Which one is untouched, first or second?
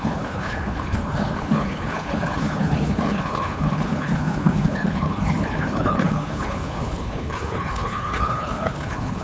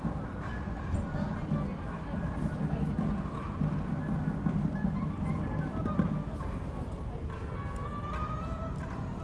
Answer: second